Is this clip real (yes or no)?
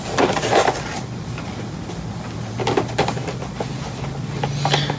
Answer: yes